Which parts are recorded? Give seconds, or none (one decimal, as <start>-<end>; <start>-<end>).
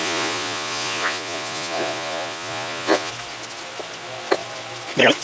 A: 3.1-5.2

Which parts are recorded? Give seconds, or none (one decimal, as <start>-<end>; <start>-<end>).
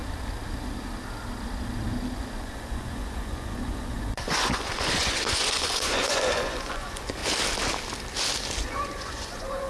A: 0.0-2.1; 7.2-8.6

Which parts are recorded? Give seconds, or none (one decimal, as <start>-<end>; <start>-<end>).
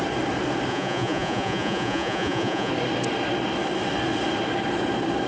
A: 0.0-0.7; 2.7-5.3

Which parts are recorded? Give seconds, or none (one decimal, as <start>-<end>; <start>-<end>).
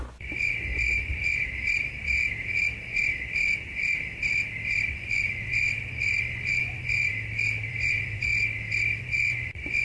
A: 1.4-4.9; 7.1-7.7; 8.3-9.0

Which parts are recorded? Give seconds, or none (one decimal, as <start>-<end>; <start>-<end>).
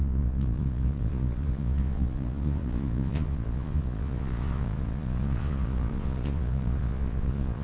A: none